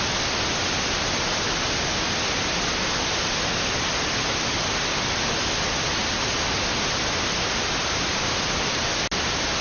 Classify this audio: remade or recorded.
recorded